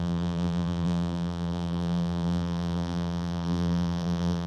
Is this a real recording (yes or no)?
no